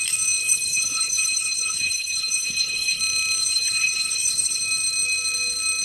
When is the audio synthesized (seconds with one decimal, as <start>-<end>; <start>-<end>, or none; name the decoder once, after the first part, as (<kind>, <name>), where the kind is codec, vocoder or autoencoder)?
0.4-3.0 (codec, HILCodec); 3.4-4.6